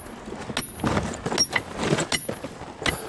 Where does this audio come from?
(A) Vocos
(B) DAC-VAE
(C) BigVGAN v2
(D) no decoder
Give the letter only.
D